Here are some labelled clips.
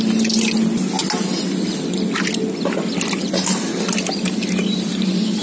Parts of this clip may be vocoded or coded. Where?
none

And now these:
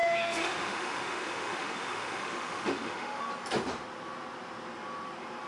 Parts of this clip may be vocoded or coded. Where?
0.0-3.3 (autoencoder, DAC-VAE)